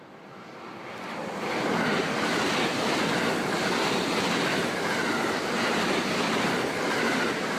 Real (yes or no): yes